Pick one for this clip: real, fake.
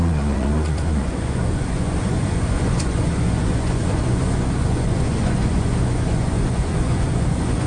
fake